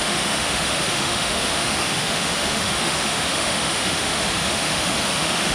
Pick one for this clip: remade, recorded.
remade